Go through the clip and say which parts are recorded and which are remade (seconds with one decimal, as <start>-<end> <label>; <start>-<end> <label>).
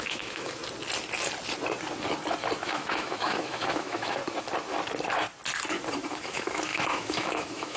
0.0-0.6 remade; 0.6-2.6 recorded; 2.6-4.2 remade; 4.2-6.1 recorded; 6.1-7.8 remade